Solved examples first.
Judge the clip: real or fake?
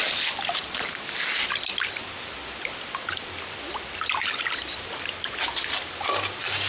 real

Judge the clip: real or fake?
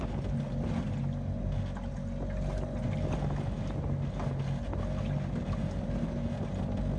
real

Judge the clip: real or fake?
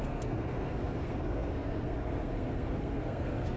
fake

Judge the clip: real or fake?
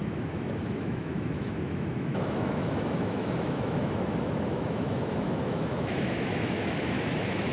fake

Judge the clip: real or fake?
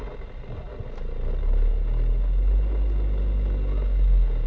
real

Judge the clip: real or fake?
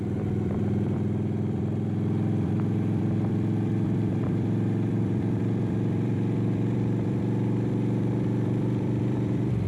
fake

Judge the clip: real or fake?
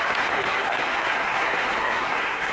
fake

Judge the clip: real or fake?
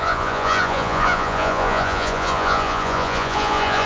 fake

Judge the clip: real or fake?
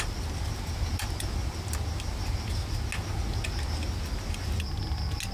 real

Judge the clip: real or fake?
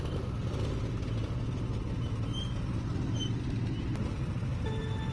real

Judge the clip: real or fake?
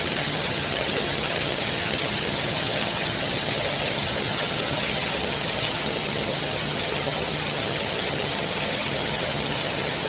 fake